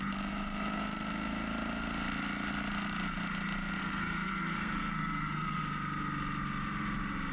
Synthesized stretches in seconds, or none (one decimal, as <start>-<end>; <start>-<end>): 3.8-5.6